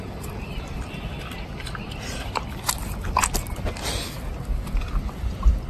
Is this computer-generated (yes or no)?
no